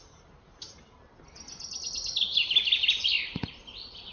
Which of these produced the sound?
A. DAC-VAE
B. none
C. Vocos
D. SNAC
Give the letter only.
B